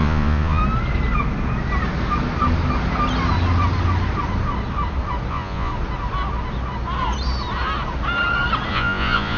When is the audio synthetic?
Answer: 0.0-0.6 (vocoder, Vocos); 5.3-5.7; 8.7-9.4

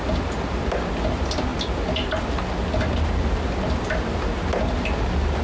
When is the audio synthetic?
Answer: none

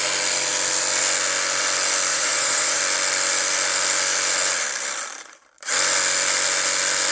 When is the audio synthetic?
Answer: 2.1-2.8 (vocoder, Vocos)

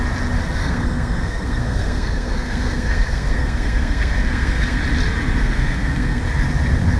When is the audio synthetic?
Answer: 0.6-4.8 (codec, SNAC); 5.4-6.2

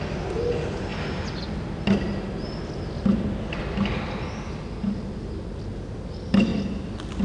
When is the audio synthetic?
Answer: none